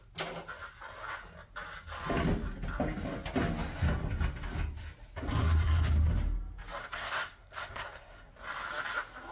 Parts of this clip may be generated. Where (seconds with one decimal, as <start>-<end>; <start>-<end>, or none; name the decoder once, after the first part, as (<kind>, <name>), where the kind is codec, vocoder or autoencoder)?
5.4-5.9 (codec, SNAC); 6.8-8.3